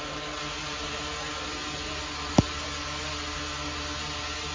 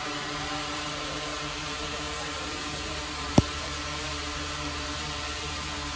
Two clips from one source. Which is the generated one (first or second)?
second